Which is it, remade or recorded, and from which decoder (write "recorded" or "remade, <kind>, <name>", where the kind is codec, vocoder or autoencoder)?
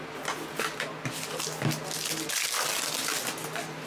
recorded